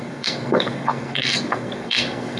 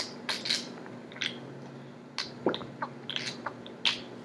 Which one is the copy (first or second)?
first